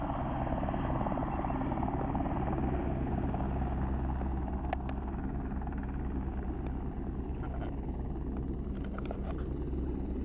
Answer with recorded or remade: recorded